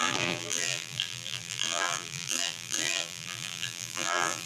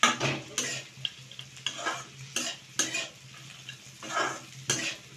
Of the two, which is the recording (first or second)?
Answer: second